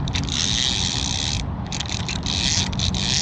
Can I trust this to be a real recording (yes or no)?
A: yes